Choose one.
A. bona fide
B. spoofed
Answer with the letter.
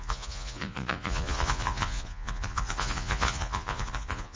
B